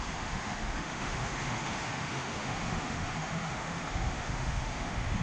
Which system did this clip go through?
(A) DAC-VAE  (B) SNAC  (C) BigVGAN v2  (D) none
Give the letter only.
A